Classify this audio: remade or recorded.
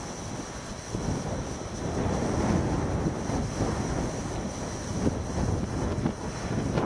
recorded